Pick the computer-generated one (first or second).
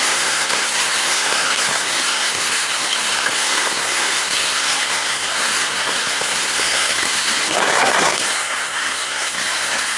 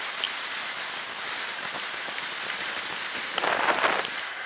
first